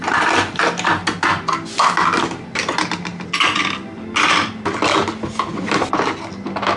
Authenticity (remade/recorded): recorded